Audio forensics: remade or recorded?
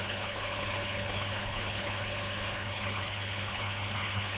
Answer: remade